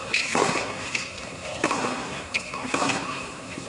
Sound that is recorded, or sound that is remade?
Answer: remade